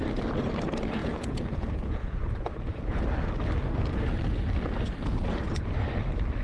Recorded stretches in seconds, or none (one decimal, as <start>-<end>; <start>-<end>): 0.0-1.0; 2.9-6.4

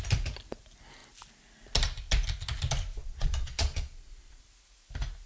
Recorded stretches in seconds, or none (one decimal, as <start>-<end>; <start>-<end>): 0.0-3.0; 4.4-5.3

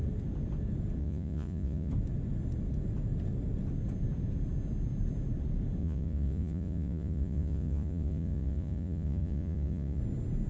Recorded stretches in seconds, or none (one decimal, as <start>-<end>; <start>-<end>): 0.0-1.0; 1.9-5.8; 10.0-10.5

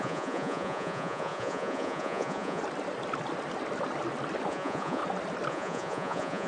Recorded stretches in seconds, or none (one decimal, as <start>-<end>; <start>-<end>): 2.6-4.5; 5.0-5.5

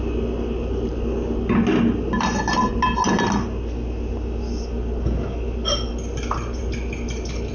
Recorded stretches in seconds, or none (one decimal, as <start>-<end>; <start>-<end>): 0.0-7.5

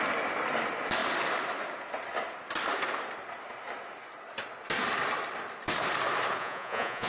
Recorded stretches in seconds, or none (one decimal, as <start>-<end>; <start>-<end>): 0.0-6.4

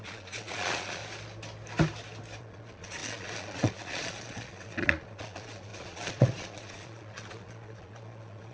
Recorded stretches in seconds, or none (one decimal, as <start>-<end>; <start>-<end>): 1.0-2.4